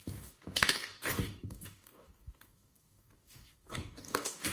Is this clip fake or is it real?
fake